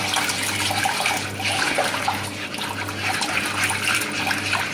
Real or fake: real